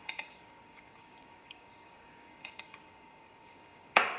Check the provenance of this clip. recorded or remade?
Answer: remade